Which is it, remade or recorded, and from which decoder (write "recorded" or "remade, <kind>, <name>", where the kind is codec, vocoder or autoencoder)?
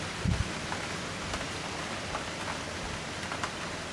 recorded